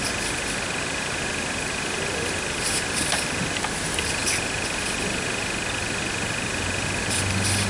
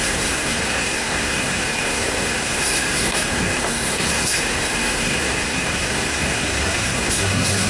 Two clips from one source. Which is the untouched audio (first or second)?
first